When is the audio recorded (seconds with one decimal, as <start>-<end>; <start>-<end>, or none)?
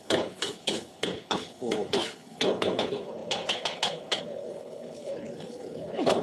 none